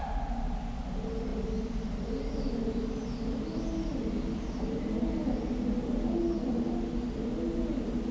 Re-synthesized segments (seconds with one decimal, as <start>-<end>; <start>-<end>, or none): none